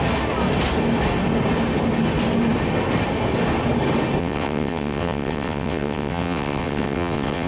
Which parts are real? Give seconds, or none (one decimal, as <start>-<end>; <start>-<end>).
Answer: 0.0-4.2